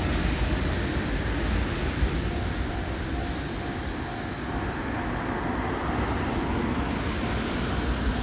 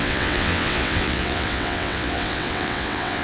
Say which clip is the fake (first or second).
second